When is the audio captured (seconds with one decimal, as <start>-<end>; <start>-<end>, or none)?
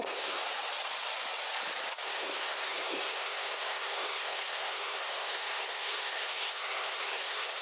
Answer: 0.4-2.0